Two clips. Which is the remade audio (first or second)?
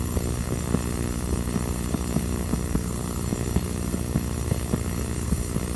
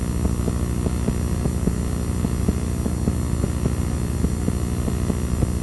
first